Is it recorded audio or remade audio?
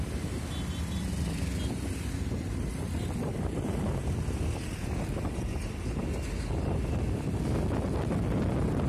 recorded